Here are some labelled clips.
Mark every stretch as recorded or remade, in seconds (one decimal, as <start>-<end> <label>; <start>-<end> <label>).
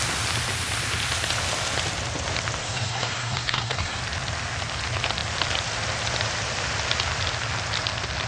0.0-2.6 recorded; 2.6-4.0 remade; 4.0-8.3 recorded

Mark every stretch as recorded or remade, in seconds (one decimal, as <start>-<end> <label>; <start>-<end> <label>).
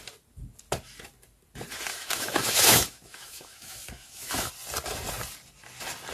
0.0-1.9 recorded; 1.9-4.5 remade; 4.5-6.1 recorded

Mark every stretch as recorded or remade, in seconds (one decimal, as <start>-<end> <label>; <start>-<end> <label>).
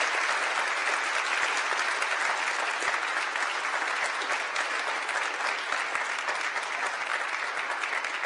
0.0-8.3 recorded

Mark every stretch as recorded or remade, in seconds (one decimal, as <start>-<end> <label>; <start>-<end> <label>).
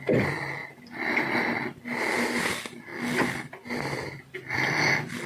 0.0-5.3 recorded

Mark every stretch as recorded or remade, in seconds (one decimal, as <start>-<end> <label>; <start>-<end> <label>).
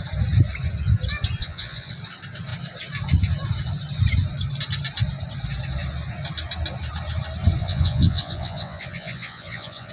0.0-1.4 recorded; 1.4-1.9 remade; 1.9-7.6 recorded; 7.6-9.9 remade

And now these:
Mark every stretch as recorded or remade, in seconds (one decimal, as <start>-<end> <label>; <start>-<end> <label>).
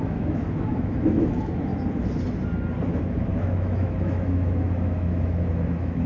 0.0-1.7 remade; 1.7-3.0 recorded; 3.0-6.1 remade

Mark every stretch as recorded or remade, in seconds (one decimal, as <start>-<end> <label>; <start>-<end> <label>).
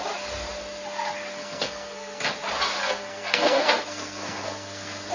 0.0-1.4 recorded; 1.4-2.2 remade; 2.2-2.8 recorded; 2.8-5.1 remade